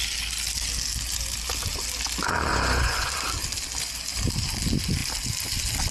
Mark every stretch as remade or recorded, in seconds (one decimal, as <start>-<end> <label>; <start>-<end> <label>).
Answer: 0.0-2.5 recorded; 2.5-3.1 remade; 3.1-5.9 recorded